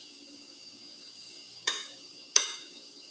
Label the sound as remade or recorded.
remade